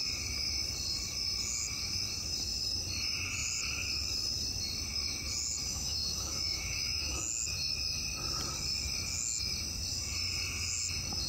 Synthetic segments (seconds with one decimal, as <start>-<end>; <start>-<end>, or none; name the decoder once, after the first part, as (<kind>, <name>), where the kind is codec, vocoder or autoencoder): 5.7-7.2 (autoencoder, DAC-VAE)